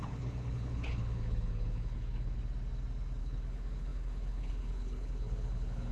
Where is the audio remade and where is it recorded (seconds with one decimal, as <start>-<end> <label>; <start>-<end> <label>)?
0.0-2.4 remade; 2.4-3.2 recorded; 3.2-5.9 remade